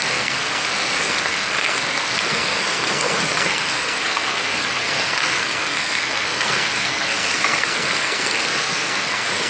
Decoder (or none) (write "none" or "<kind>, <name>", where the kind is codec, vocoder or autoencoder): codec, SNAC